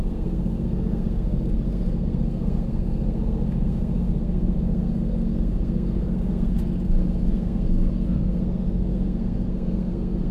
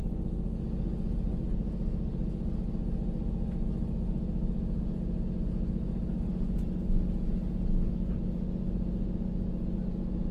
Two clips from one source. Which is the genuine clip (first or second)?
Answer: second